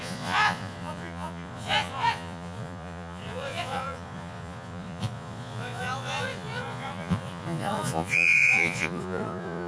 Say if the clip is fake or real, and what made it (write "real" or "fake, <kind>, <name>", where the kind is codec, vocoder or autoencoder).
fake, vocoder, Vocos